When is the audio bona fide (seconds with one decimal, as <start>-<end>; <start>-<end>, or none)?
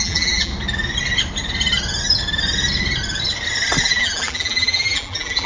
0.5-3.8